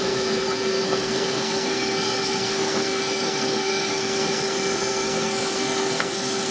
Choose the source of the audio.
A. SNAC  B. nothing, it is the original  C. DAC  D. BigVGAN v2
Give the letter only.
A